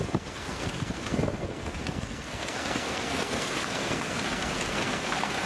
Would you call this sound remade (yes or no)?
yes